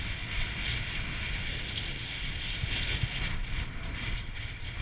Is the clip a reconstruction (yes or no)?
no